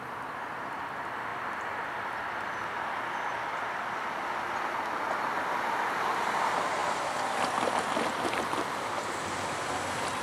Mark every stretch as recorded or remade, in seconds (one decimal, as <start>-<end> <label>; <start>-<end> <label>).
0.0-1.3 recorded; 1.3-2.6 remade; 2.6-6.8 recorded; 6.8-9.1 remade; 9.1-10.2 recorded